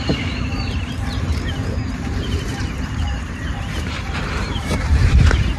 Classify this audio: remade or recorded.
remade